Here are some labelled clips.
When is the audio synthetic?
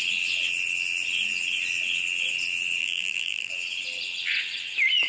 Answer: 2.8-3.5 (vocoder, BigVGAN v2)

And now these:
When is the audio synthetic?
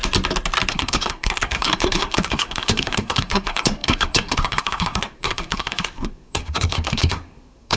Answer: 0.7-7.8 (codec, SNAC)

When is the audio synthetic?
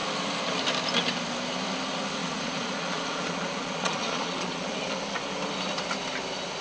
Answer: 2.2-4.9 (vocoder, Vocos)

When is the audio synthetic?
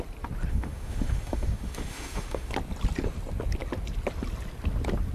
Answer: 0.5-2.5 (autoencoder, DAC-VAE)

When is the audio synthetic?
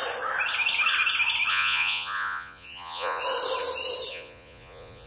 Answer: 1.5-3.2 (vocoder, Vocos); 4.1-5.1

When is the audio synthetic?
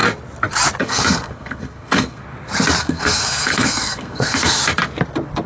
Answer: 0.8-2.2 (codec, SNAC); 2.8-4.6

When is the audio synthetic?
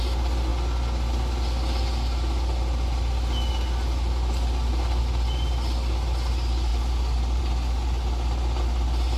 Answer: none